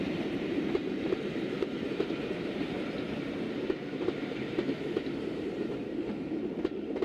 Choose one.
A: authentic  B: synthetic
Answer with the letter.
B